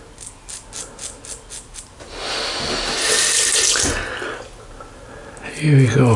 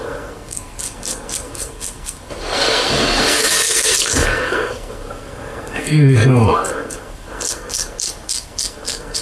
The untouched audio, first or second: first